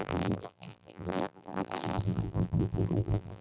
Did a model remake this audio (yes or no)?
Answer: yes